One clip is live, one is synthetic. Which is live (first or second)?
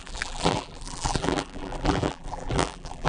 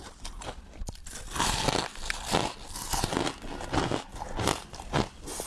second